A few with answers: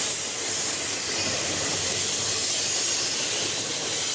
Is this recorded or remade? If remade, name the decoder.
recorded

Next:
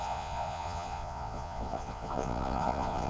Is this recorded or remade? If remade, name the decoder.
remade, vocoder, Vocos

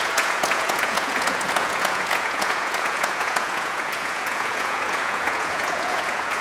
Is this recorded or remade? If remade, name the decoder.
remade, vocoder, Vocos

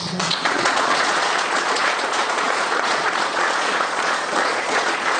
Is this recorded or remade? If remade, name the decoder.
remade, vocoder, Vocos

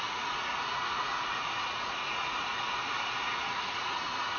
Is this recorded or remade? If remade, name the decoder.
remade, vocoder, Vocos